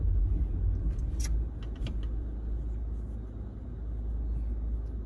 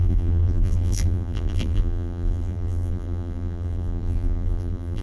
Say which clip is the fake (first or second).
second